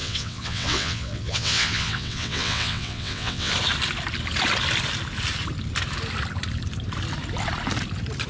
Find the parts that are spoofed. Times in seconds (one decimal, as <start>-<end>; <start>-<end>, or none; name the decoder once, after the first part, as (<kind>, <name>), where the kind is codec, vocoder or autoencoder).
0.0-3.5 (vocoder, WaveNeXt)